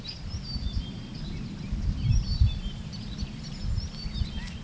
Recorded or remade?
recorded